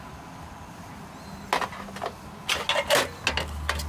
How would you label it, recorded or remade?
recorded